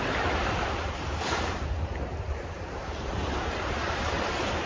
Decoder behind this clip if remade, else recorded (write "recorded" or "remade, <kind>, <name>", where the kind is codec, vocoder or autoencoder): remade, vocoder, BigVGAN v2